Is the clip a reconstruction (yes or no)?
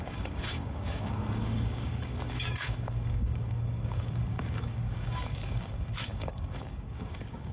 yes